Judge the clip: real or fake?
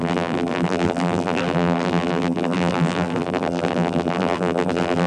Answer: fake